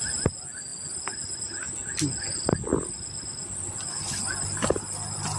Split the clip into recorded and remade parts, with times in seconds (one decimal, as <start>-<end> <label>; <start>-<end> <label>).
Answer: 0.0-5.4 recorded